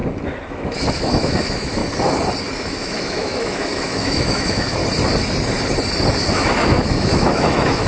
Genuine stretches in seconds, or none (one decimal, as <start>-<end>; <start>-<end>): 0.0-0.5; 1.8-2.5; 4.8-6.3